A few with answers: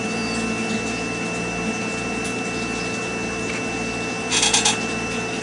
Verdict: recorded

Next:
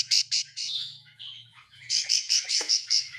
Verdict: remade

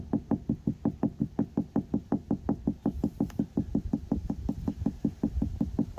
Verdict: recorded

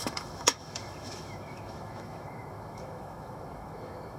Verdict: remade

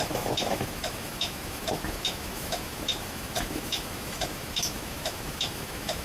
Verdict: remade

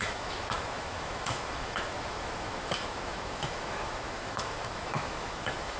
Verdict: remade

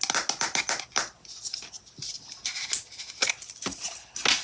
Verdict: recorded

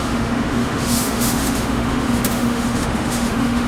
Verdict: remade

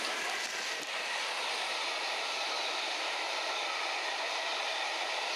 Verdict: recorded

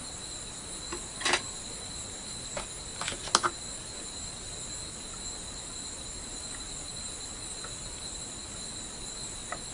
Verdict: recorded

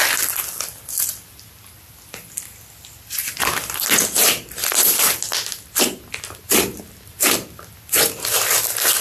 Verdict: recorded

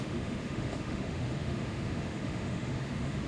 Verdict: remade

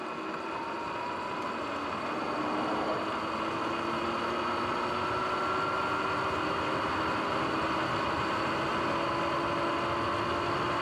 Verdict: recorded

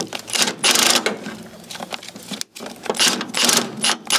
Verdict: recorded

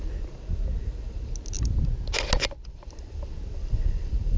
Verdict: recorded